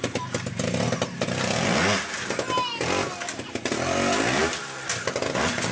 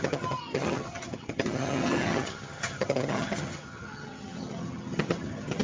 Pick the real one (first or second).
first